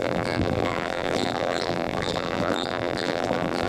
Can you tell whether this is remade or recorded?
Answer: remade